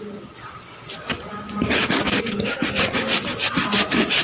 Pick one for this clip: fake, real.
real